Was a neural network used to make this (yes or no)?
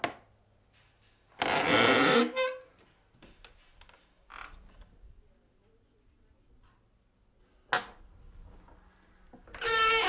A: no